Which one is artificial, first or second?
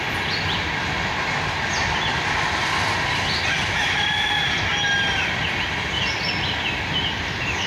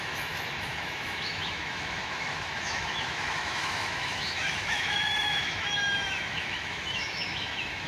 second